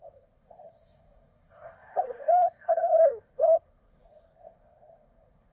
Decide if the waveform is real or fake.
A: fake